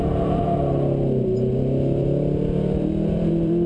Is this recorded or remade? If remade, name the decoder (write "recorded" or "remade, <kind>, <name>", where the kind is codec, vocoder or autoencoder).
remade, vocoder, BigVGAN v2